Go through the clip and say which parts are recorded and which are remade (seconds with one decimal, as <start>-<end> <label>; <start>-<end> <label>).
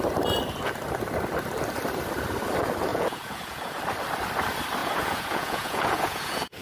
0.0-2.9 recorded; 2.9-3.8 remade; 3.8-4.8 recorded; 4.8-6.6 remade